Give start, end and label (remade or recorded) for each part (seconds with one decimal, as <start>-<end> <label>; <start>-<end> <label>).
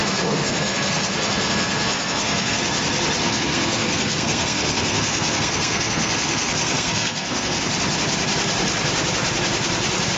0.0-2.6 remade; 2.6-3.2 recorded; 3.2-7.6 remade; 7.6-10.2 recorded